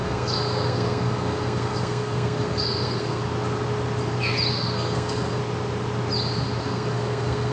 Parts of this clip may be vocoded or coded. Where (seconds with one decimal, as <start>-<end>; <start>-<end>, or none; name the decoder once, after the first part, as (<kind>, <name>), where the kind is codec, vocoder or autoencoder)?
0.0-3.2 (codec, SNAC); 4.5-5.4; 6.6-7.5